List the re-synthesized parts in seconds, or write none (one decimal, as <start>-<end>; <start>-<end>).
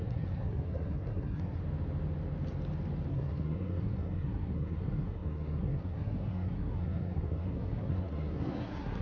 0.0-1.6; 3.1-9.0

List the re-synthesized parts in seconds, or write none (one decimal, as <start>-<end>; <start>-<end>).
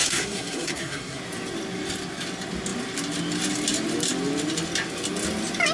0.0-1.2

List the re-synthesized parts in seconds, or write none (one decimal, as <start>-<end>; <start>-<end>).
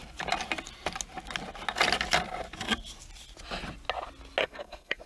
4.4-5.1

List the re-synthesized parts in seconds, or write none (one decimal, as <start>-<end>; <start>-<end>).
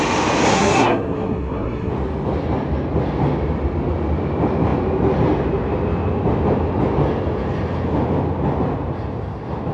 0.5-1.9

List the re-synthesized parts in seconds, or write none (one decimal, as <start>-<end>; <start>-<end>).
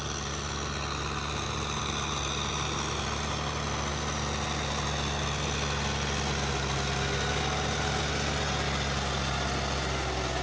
none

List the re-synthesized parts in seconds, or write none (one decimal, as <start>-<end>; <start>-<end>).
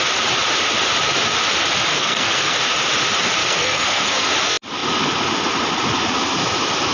1.9-2.6; 3.4-4.3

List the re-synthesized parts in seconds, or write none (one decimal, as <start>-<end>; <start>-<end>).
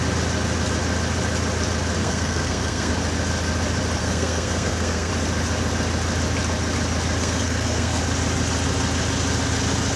2.0-2.9; 4.0-5.1; 7.2-8.0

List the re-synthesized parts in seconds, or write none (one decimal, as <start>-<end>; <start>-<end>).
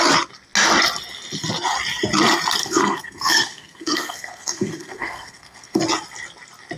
2.6-5.8